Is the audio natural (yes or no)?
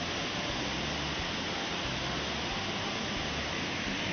yes